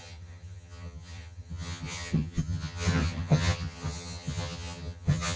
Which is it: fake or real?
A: fake